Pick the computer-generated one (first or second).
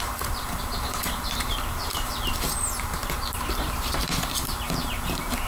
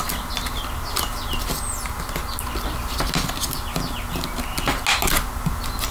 first